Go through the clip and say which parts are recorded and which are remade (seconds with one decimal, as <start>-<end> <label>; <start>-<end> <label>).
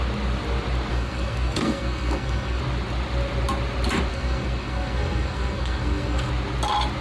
0.0-0.9 recorded; 0.9-2.6 remade; 2.6-4.1 recorded; 4.1-6.3 remade; 6.3-7.0 recorded